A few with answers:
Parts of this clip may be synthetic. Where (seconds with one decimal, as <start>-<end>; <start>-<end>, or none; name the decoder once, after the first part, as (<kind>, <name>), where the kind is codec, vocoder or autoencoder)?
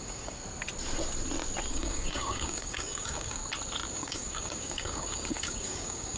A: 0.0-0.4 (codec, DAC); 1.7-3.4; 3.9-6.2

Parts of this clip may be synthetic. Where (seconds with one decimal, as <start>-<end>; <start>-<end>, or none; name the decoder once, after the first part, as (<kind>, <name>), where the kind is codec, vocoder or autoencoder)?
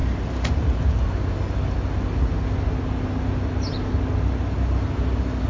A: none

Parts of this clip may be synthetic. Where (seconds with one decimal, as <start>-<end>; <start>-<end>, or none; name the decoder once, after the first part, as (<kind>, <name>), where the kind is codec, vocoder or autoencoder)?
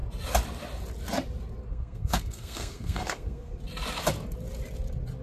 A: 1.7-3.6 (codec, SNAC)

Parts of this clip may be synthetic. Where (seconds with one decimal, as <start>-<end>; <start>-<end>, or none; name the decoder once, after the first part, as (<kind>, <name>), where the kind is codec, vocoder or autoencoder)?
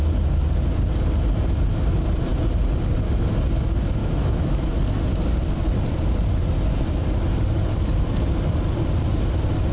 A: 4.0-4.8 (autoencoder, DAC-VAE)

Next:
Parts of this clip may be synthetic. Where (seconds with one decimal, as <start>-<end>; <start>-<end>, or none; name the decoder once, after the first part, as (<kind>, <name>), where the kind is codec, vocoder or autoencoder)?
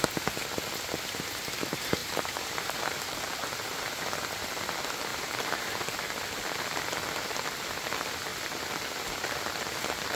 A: 2.0-4.1 (vocoder, BigVGAN v2); 5.1-6.0; 8.3-8.8